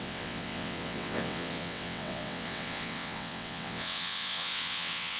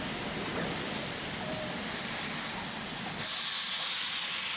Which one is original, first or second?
second